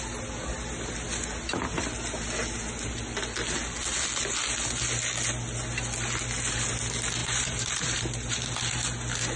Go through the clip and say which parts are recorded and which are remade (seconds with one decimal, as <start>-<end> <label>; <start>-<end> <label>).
0.0-7.2 recorded; 7.2-8.5 remade; 8.5-9.4 recorded